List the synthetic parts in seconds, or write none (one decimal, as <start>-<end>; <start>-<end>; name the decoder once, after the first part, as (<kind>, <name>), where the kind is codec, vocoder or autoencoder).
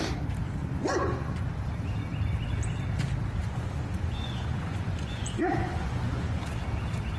0.6-1.3 (vocoder, Vocos); 3.4-6.4